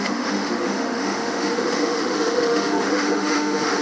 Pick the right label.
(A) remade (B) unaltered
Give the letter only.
A